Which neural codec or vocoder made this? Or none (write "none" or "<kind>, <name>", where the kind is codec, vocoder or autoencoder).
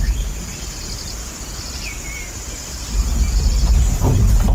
none